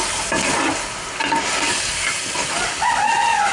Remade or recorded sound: recorded